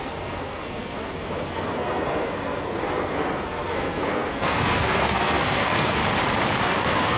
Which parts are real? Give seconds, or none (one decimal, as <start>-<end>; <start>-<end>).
6.0-6.6